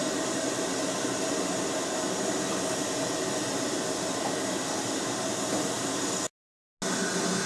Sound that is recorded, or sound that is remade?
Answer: recorded